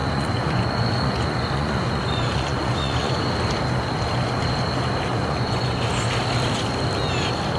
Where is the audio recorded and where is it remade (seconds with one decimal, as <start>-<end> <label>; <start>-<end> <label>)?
0.0-3.2 remade; 3.2-5.1 recorded; 5.1-5.9 remade; 5.9-7.6 recorded